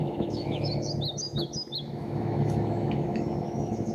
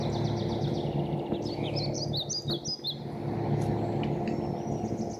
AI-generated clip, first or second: first